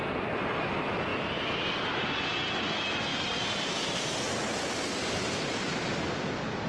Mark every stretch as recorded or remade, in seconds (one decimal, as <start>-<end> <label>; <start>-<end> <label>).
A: 0.0-3.1 recorded; 3.1-4.2 remade; 4.2-6.7 recorded